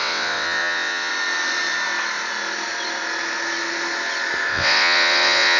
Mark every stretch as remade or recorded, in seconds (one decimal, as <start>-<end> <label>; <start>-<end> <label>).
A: 0.0-1.1 remade; 1.1-4.5 recorded; 4.5-5.6 remade